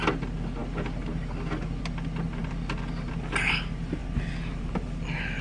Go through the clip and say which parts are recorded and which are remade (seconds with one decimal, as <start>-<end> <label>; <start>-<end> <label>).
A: 0.0-5.4 recorded